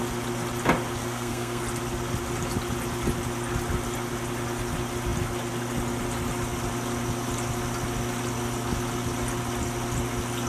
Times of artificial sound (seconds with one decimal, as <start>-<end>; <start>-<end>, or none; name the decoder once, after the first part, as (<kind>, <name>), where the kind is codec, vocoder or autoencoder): 1.0-1.6 (codec, SNAC)